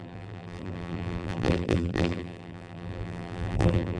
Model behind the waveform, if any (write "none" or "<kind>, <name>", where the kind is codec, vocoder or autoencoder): vocoder, BigVGAN v2